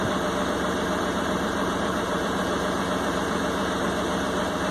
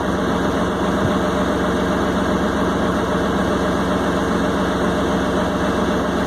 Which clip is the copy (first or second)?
first